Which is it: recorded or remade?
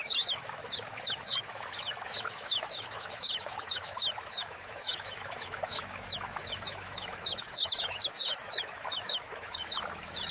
remade